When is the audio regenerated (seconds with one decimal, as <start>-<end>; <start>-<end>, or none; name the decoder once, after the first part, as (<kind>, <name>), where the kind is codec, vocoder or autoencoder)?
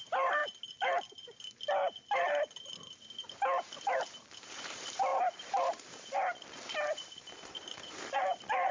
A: 0.0-0.4 (vocoder, BigVGAN v2); 4.3-8.7